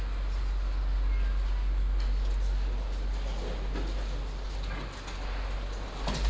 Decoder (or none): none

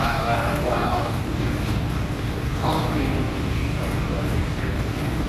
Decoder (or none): codec, DAC